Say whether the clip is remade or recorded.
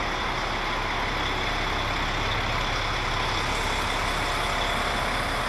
recorded